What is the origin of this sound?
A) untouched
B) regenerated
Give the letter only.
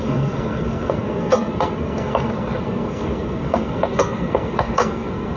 B